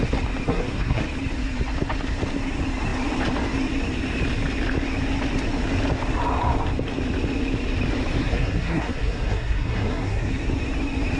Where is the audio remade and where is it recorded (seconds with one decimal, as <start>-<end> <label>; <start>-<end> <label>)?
0.0-0.5 recorded; 0.5-1.0 remade; 1.0-8.2 recorded; 8.2-10.3 remade; 10.3-11.2 recorded